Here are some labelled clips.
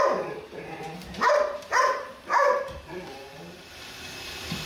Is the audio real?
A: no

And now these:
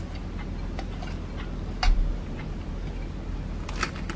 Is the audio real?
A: yes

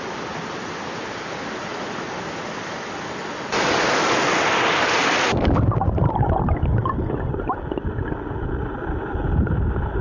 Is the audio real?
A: yes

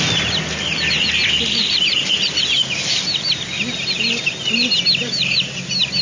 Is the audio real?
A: yes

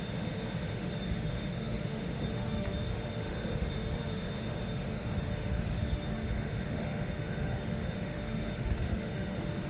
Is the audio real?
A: no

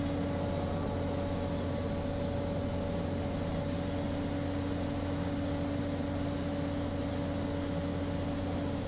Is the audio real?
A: yes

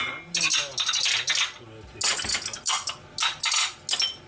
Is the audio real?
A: yes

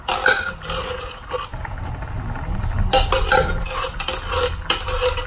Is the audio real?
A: yes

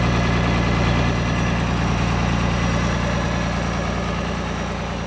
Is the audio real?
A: yes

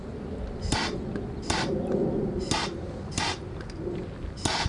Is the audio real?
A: yes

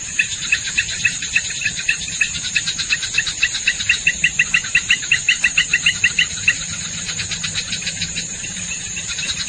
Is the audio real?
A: no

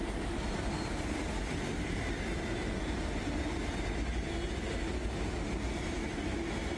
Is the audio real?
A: yes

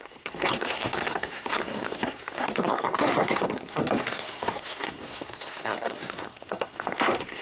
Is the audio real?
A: no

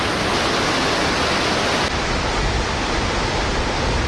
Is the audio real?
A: yes